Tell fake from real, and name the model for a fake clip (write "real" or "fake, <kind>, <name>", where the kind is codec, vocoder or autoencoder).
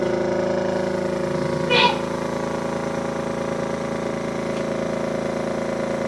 real